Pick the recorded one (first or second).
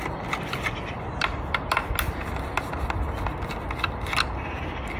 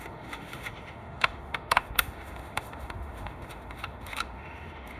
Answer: first